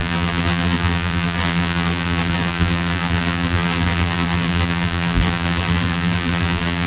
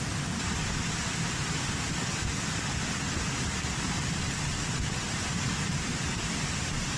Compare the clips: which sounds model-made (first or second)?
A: first